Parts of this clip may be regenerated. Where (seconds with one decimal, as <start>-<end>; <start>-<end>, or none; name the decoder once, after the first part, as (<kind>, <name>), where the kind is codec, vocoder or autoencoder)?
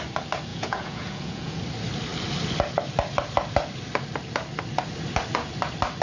0.5-1.6 (vocoder, Vocos)